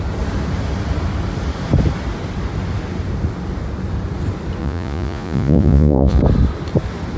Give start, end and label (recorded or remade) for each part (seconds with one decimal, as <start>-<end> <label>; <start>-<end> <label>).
0.0-4.6 recorded; 4.6-6.2 remade; 6.2-7.2 recorded